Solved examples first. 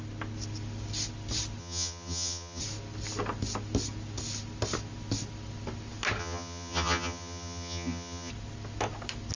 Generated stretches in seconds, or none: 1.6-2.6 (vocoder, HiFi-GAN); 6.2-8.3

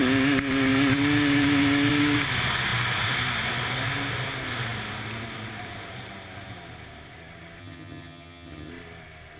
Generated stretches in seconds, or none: 7.6-8.7 (vocoder, HiFi-GAN)

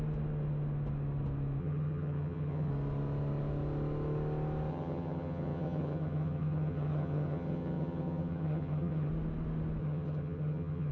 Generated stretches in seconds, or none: 1.6-2.7 (vocoder, HiFi-GAN); 4.7-9.1; 9.8-10.9

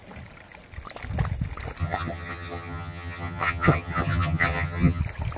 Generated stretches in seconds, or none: 1.8-5.0 (vocoder, HiFi-GAN)

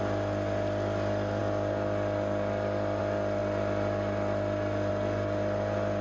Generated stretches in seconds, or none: none

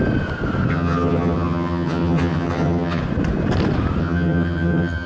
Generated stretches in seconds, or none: 0.7-3.0 (vocoder, HiFi-GAN); 4.0-5.1

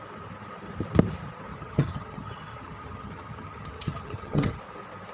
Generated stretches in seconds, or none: 1.5-4.6 (vocoder, HiFi-GAN)

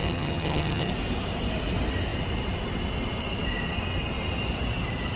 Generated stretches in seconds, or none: 0.0-0.9 (vocoder, HiFi-GAN)